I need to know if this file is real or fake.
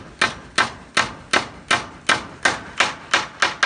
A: real